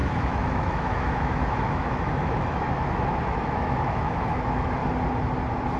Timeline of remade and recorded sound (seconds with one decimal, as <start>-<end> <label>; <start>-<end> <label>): 0.0-4.8 remade; 4.8-5.8 recorded